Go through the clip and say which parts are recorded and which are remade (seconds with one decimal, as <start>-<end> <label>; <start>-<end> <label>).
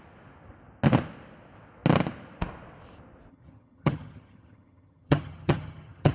0.0-3.3 recorded; 3.3-6.1 remade